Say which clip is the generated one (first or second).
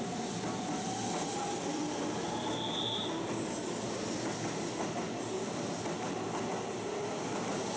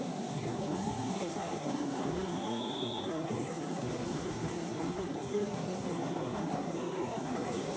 second